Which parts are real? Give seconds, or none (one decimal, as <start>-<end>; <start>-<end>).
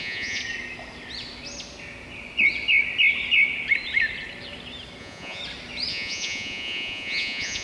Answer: 0.4-5.0; 5.4-5.9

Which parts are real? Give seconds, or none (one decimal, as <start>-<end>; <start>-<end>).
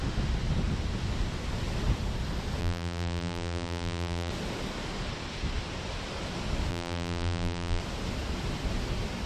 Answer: 0.0-2.6; 4.3-6.7; 7.8-9.3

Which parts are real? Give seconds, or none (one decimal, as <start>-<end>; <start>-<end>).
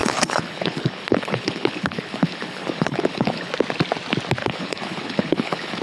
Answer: 3.5-4.4